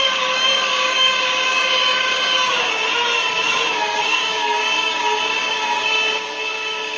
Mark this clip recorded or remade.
remade